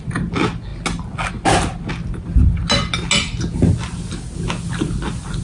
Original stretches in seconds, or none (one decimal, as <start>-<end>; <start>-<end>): 0.0-5.4